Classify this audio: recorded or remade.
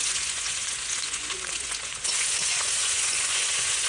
remade